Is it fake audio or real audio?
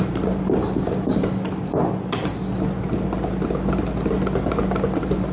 real